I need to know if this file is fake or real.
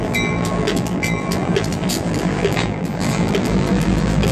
fake